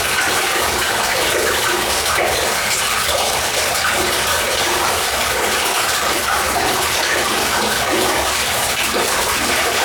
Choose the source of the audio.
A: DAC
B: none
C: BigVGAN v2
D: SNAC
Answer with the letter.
A